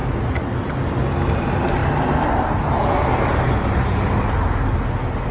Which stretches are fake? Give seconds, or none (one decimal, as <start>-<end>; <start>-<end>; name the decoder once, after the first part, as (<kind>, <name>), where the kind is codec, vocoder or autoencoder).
none